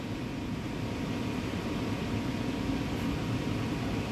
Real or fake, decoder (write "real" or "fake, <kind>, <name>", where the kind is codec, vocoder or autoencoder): real